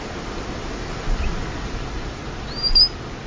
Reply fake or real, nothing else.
real